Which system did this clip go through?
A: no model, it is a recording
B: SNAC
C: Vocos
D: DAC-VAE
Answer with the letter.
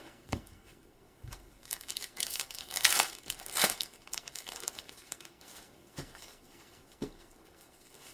B